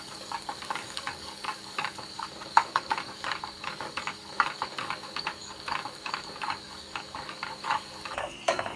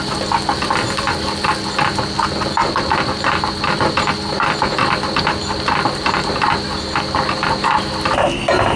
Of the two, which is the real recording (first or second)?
second